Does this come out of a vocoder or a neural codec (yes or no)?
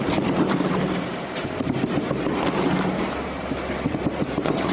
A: yes